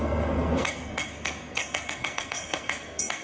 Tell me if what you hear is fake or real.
fake